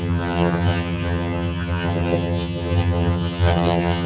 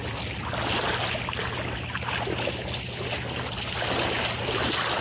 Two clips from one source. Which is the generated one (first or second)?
first